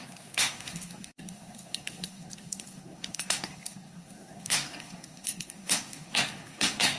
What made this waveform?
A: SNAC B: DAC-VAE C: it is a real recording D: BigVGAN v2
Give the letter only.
A